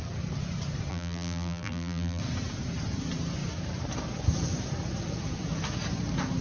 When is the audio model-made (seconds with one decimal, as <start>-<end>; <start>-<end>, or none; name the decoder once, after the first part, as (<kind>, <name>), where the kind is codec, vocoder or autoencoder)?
0.9-2.2 (vocoder, BigVGAN v2)